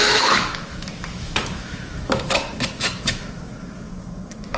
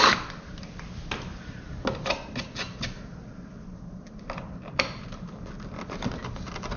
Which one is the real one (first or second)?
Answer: second